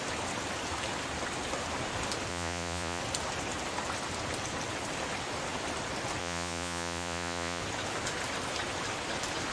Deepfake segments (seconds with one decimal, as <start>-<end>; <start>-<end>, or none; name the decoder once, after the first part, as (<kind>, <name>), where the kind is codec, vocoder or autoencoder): 2.3-3.0 (vocoder, Vocos); 6.2-7.6